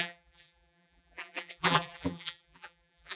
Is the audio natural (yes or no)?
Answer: no